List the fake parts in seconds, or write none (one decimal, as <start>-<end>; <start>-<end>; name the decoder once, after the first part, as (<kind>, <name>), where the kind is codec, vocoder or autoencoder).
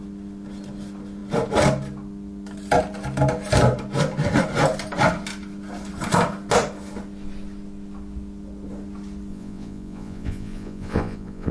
9.3-11.5 (vocoder, Vocos)